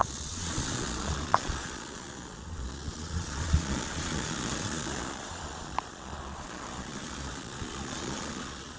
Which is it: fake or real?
fake